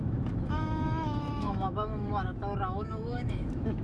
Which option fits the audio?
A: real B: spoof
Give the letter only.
B